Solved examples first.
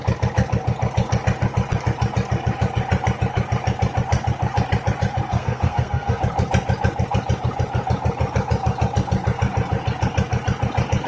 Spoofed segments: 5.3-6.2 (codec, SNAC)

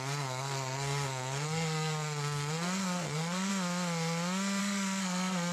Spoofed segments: 0.0-3.5 (codec, SNAC); 4.6-5.5

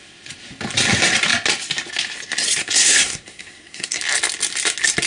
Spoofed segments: 2.6-4.0 (codec, SNAC)

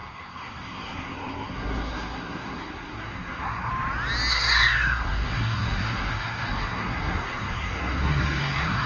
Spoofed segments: 0.0-3.7 (codec, SNAC); 4.3-8.9

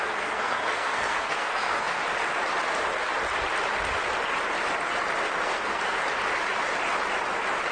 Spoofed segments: 0.0-2.0 (codec, SNAC); 5.4-6.0

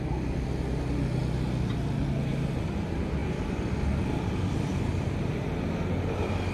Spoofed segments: none